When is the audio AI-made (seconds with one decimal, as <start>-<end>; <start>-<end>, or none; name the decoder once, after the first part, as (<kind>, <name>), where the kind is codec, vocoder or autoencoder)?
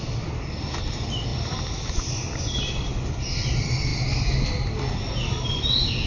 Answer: 0.0-3.9 (vocoder, BigVGAN v2); 5.5-6.1